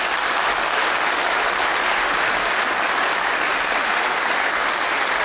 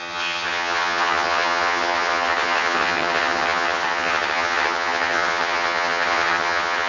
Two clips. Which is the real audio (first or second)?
first